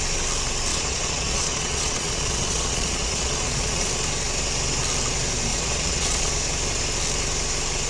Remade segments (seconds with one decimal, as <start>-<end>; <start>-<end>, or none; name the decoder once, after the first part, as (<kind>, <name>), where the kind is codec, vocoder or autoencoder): 0.7-3.9 (vocoder, Vocos); 5.5-6.3